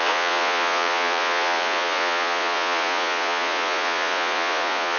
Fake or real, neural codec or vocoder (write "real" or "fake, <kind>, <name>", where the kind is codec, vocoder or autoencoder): fake, vocoder, Vocos